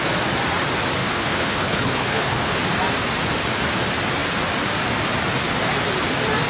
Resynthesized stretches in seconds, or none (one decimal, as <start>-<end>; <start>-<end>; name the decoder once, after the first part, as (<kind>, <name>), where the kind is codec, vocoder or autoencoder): 1.0-2.6 (codec, HILCodec)